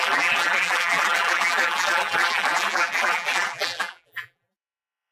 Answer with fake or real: fake